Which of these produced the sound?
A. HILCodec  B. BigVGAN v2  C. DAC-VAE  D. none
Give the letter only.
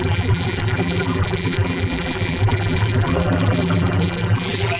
B